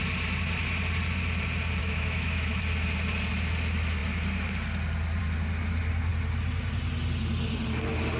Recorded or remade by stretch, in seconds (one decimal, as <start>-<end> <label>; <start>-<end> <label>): 0.0-1.8 recorded; 1.8-2.6 remade; 2.6-8.2 recorded

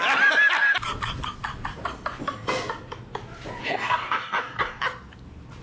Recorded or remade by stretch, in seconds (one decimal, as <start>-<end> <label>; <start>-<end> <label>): 0.0-3.6 recorded; 3.6-4.8 remade; 4.8-5.6 recorded